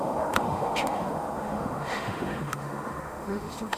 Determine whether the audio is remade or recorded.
remade